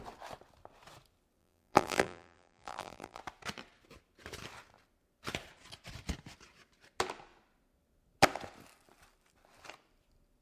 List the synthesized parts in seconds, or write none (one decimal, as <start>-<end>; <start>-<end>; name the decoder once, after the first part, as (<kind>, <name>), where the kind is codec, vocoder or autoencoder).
1.4-3.2 (vocoder, BigVGAN v2)